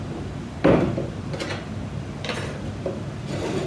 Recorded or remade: recorded